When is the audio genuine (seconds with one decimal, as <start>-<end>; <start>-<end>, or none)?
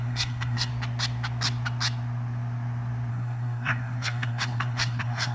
0.7-3.1